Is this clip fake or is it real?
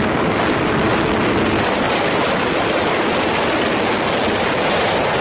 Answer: real